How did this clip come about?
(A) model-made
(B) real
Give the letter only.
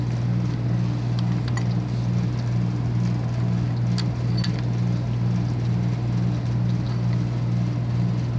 B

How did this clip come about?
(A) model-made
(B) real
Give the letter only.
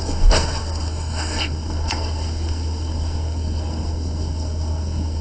A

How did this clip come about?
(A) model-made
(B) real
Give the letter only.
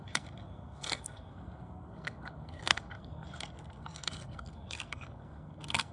A